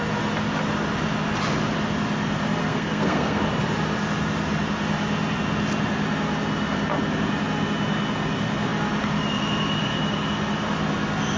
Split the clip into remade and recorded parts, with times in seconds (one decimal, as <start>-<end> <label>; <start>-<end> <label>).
0.0-2.6 recorded; 2.6-3.4 remade; 3.4-11.4 recorded